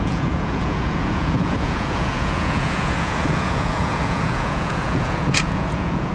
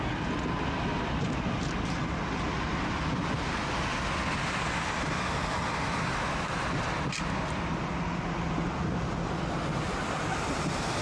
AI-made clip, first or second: first